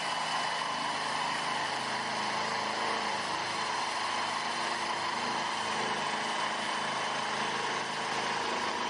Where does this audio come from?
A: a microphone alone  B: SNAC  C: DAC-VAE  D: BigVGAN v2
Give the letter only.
A